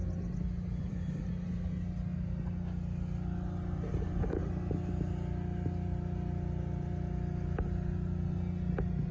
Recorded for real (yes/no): yes